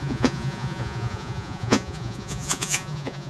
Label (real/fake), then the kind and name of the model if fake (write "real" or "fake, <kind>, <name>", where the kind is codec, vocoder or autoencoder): fake, vocoder, Vocos